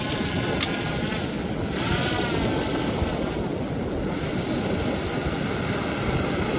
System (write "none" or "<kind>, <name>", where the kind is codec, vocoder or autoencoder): none